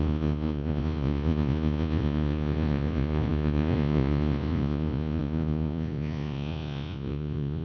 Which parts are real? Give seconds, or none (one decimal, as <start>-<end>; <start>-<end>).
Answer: none